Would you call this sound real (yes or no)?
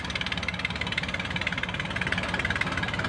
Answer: yes